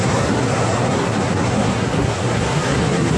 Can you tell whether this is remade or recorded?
remade